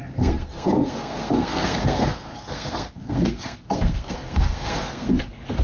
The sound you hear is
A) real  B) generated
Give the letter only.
B